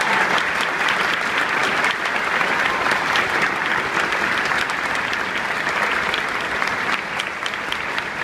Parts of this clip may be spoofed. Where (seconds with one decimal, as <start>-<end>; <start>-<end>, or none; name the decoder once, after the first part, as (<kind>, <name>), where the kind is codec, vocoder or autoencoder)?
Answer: 1.6-3.0 (vocoder, BigVGAN v2)